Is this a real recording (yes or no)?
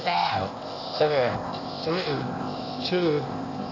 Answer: no